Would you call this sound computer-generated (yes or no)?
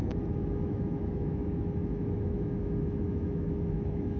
yes